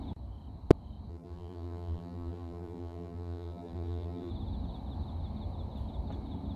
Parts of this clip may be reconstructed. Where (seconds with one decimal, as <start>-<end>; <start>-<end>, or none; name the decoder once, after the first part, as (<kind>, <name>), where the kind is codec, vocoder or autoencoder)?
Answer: 1.1-4.3 (vocoder, BigVGAN v2)